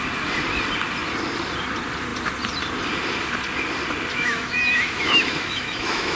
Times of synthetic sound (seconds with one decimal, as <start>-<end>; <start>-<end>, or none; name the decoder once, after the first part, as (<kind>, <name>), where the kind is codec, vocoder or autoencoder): 4.1-6.2 (autoencoder, DAC-VAE)